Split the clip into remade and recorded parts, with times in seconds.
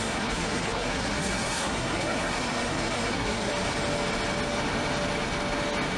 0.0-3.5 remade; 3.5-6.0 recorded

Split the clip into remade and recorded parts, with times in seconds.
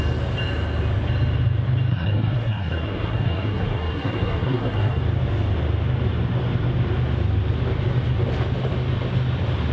0.0-1.9 recorded; 1.9-5.0 remade; 5.0-9.7 recorded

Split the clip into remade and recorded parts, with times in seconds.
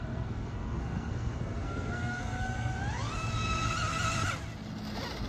0.0-2.7 remade; 2.7-5.3 recorded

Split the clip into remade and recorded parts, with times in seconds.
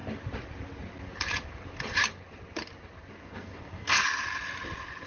0.0-3.2 recorded; 3.2-4.0 remade; 4.0-5.1 recorded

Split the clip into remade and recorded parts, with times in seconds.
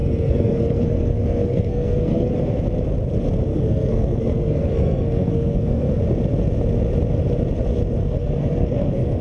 0.0-2.3 remade; 2.3-3.5 recorded; 3.5-6.0 remade; 6.0-8.0 recorded; 8.0-9.2 remade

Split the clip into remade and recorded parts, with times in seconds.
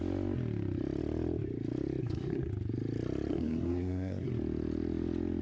0.0-2.0 recorded; 2.0-2.5 remade; 2.5-3.3 recorded; 3.3-4.3 remade; 4.3-5.4 recorded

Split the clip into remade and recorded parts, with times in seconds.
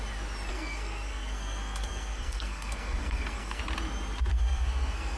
0.0-0.5 recorded; 0.5-3.6 remade; 3.6-4.3 recorded; 4.3-5.2 remade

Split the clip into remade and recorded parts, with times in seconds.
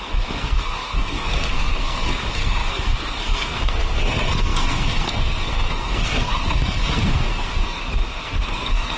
0.0-9.0 remade